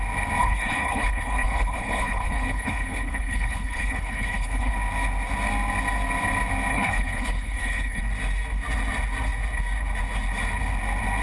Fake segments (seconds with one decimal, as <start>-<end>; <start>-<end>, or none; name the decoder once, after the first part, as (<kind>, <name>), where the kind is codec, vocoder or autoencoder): 0.4-4.7 (codec, HILCodec); 6.7-8.0